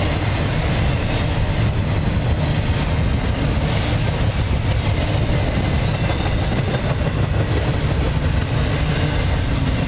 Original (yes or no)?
yes